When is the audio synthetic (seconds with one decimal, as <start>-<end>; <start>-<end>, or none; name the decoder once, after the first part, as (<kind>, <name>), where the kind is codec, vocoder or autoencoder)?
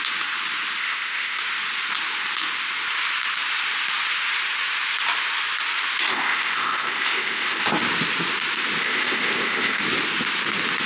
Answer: 0.8-1.4 (codec, ZipCodec); 6.1-7.6; 8.8-9.8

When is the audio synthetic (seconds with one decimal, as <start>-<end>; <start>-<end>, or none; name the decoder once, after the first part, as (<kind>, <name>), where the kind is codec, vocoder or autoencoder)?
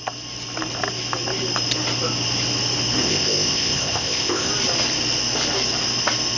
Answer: 3.0-4.5 (codec, ZipCodec)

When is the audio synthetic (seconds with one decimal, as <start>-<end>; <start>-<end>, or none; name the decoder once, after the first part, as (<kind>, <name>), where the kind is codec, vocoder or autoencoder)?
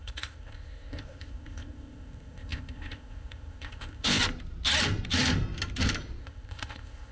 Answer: 0.0-4.2 (codec, ZipCodec); 6.2-7.1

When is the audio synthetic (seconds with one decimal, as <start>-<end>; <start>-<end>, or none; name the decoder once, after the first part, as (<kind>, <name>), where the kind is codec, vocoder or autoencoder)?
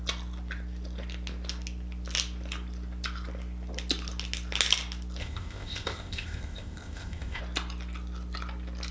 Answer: 5.2-7.4 (codec, ZipCodec)